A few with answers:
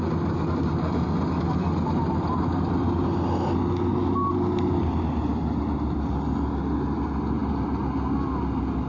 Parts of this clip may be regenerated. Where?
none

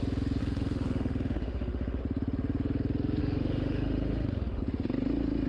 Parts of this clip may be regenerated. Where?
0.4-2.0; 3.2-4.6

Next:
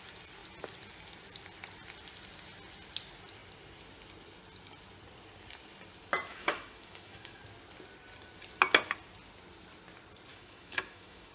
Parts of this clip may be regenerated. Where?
6.3-7.4; 10.3-11.3